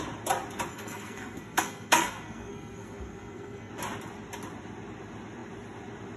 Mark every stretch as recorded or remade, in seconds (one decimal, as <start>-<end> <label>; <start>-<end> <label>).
0.0-0.7 recorded; 0.7-3.7 remade; 3.7-6.2 recorded